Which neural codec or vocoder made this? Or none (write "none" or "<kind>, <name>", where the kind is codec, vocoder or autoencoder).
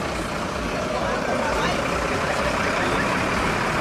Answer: vocoder, BigVGAN v2